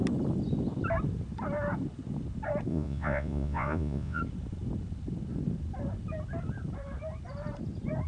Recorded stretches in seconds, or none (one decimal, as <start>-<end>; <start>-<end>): 0.0-2.7; 4.2-8.1